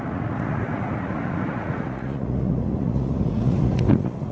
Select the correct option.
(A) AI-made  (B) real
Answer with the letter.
A